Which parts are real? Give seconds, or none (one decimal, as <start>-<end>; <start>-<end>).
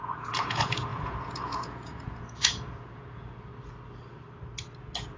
3.5-4.8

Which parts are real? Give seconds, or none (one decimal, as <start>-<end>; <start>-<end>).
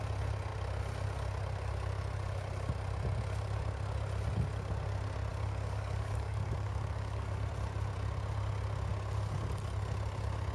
0.0-5.3; 7.5-10.5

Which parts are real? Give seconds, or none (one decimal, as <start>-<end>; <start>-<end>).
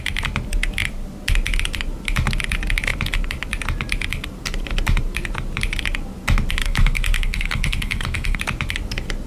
0.0-6.6; 8.4-9.3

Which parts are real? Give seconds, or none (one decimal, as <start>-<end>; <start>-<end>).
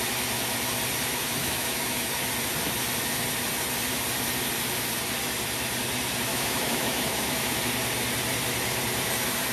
0.0-1.4; 2.1-6.3; 7.6-9.5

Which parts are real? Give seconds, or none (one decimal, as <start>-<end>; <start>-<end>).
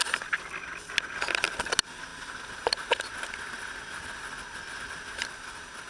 0.0-5.9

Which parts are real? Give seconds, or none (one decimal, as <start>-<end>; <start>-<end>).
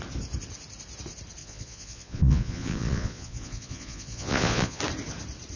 0.0-1.4; 4.8-5.6